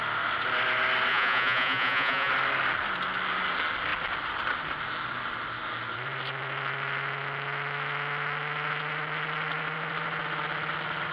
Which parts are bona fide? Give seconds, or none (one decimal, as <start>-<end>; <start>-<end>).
0.0-1.1; 2.3-11.1